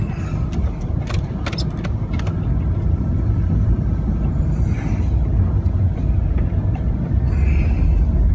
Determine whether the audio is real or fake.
real